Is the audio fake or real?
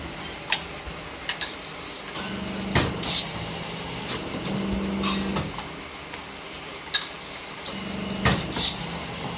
real